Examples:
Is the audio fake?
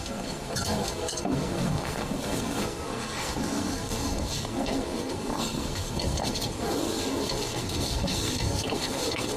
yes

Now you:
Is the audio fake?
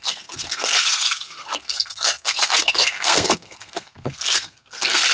yes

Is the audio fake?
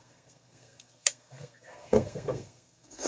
yes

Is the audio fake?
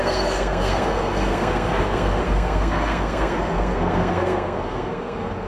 yes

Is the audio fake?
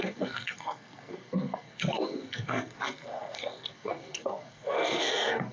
yes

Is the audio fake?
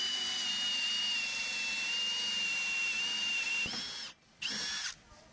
no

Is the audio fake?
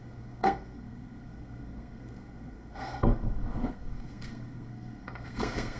yes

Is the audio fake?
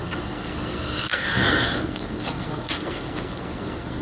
yes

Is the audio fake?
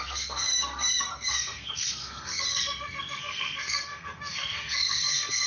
yes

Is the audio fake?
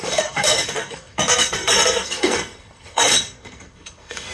yes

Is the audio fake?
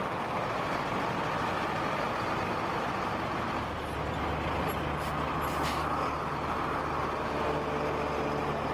no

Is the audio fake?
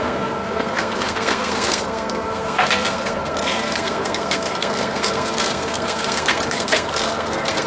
yes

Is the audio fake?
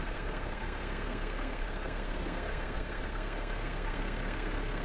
yes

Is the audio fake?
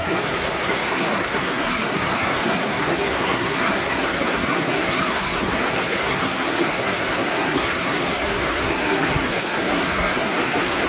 yes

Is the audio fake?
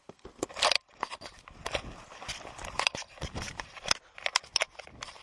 no